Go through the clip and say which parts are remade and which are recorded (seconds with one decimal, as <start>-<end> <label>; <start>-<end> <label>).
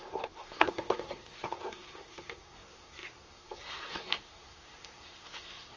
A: 0.0-5.8 remade